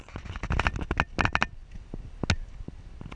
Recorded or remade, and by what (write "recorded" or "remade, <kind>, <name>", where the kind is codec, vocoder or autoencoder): recorded